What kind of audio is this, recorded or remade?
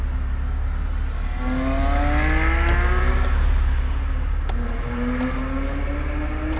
recorded